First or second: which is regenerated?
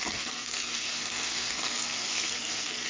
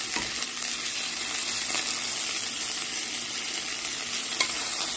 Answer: first